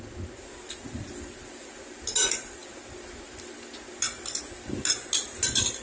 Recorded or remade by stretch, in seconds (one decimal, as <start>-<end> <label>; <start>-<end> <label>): 0.0-5.8 recorded